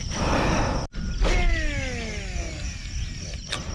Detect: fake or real real